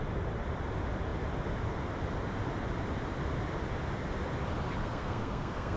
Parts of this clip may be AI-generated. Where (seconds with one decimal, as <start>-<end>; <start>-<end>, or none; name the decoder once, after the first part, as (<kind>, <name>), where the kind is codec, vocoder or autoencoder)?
4.8-5.8 (codec, SNAC)